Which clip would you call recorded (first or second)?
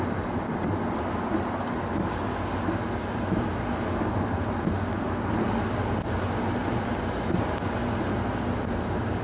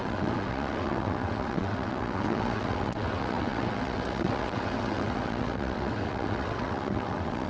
first